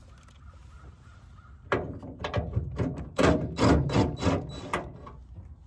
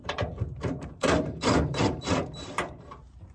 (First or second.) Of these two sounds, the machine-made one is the second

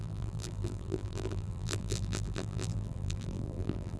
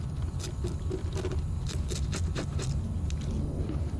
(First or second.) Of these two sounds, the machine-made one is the first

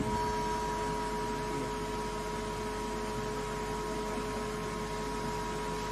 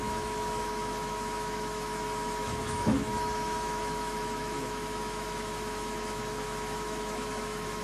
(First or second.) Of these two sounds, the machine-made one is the second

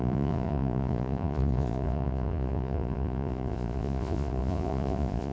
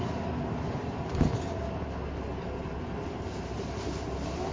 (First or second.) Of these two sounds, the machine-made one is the first